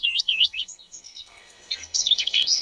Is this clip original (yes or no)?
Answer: no